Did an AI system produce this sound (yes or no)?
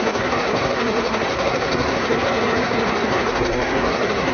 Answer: yes